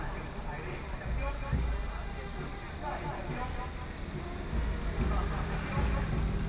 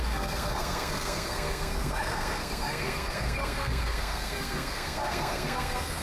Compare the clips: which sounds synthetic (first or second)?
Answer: second